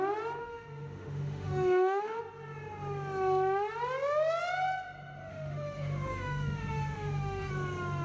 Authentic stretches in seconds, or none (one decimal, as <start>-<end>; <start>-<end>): 0.0-0.4; 2.2-5.3; 7.5-8.0